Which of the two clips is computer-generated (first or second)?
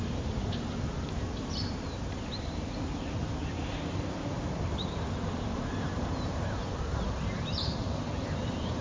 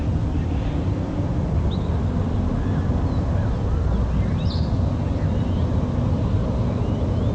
first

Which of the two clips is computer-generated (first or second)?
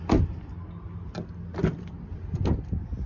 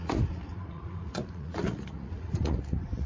second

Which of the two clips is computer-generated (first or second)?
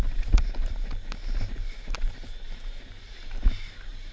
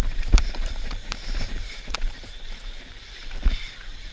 second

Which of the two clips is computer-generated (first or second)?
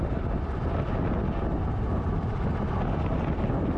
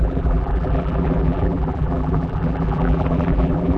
second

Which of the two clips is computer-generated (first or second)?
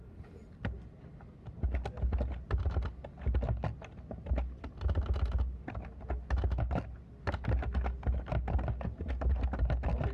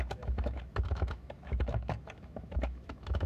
second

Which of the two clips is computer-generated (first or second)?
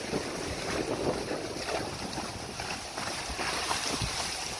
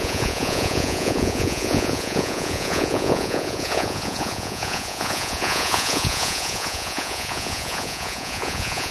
second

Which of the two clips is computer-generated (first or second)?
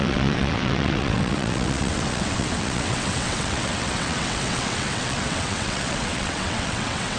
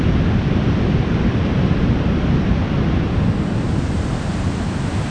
first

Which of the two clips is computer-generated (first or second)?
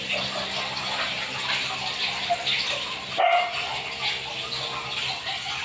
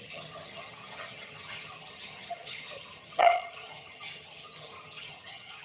second